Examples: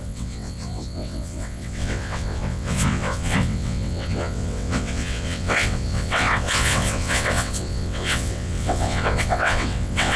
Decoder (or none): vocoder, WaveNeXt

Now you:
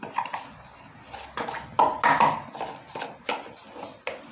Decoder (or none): none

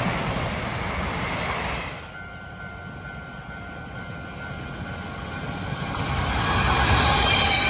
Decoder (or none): none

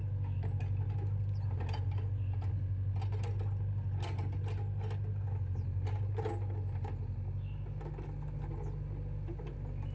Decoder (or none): none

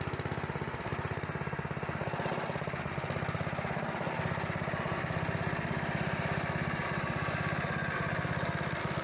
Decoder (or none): none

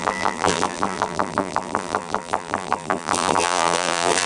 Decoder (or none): vocoder, BigVGAN v2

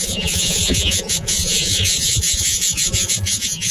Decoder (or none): vocoder, Vocos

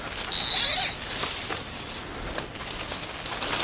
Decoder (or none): none